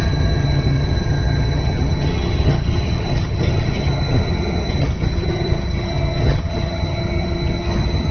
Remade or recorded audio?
remade